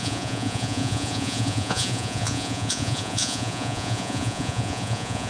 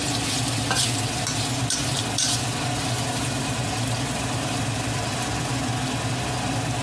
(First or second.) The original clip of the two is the second